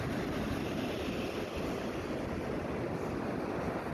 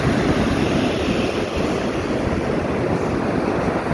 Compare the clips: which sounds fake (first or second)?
second